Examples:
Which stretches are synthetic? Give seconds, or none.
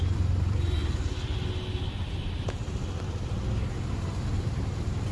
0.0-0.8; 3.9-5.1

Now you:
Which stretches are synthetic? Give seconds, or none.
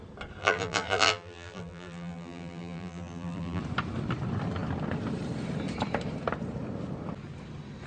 0.4-3.6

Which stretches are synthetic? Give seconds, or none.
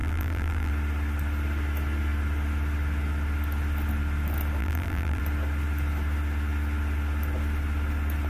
0.0-0.7; 4.6-5.2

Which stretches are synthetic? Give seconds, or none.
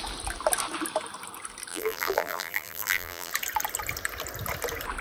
1.7-3.3